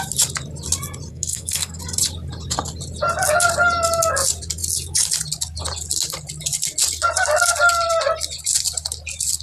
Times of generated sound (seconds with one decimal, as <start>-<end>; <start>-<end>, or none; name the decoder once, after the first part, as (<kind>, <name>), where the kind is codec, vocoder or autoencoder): 1.1-1.8 (codec, SNAC)